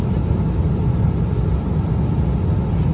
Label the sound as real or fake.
real